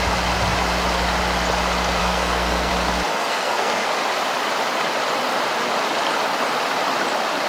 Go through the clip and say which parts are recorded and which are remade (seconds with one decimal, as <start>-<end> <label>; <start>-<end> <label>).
0.0-2.0 recorded; 2.0-2.7 remade; 2.7-3.1 recorded; 3.1-3.9 remade; 3.9-7.5 recorded